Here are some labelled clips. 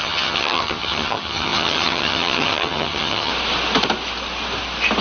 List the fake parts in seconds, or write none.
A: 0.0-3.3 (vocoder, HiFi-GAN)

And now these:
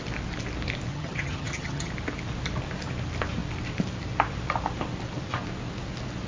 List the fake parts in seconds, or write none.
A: 0.9-1.9 (vocoder, HiFi-GAN)

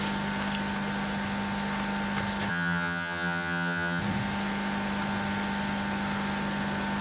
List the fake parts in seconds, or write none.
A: 2.5-4.0 (vocoder, HiFi-GAN)

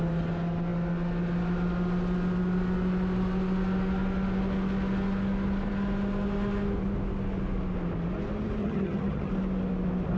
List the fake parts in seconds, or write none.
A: 8.6-9.3 (vocoder, HiFi-GAN)

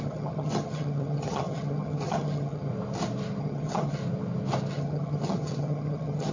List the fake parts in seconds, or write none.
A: 0.0-2.7 (vocoder, HiFi-GAN); 3.4-4.0; 4.7-6.3